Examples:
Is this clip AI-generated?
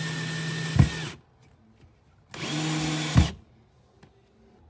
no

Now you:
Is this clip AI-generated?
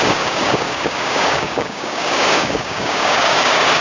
yes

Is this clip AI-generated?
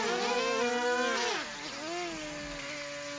no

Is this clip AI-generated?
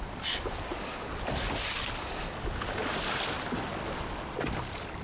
no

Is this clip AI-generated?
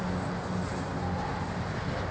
no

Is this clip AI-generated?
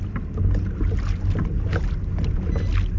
no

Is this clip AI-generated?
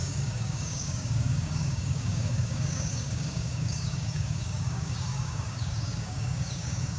yes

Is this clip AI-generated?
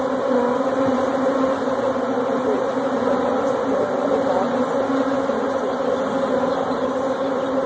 no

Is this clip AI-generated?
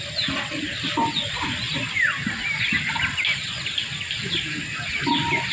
no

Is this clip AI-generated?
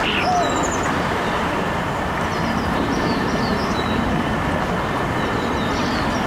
no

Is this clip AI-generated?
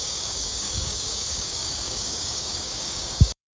yes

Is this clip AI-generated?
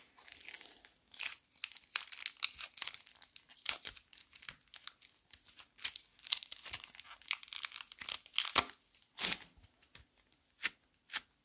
no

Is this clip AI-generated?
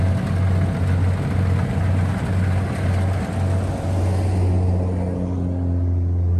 no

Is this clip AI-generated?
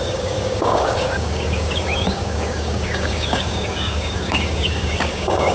yes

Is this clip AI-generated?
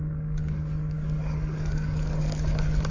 yes